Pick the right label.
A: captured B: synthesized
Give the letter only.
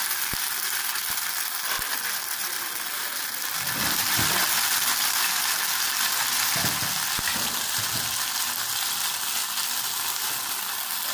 A